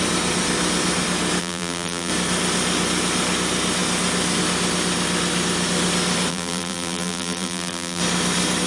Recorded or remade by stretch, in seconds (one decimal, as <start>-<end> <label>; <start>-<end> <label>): 0.0-1.4 recorded; 1.4-2.1 remade; 2.1-6.3 recorded; 6.3-8.0 remade; 8.0-8.7 recorded